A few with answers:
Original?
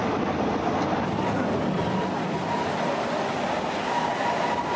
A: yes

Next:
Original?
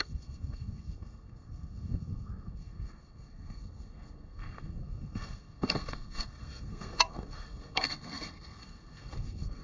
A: no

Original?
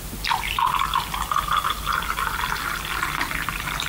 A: yes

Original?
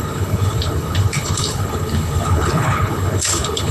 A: no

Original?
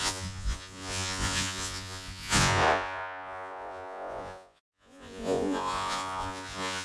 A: no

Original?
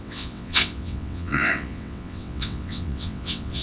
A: no